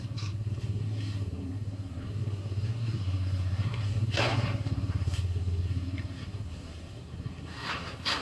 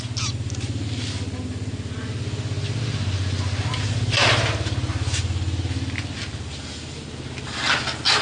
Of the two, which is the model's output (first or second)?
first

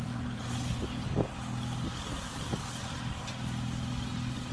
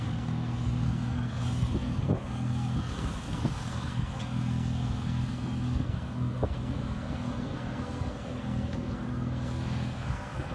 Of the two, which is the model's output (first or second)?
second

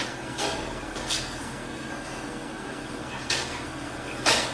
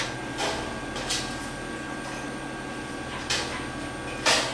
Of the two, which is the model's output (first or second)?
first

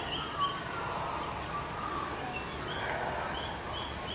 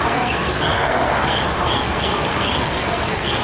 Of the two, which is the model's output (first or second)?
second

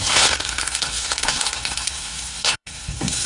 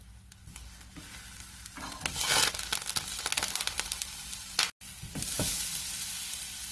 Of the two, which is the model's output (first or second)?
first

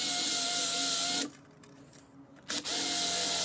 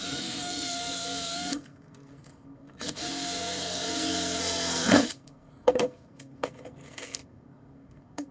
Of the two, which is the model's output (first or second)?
second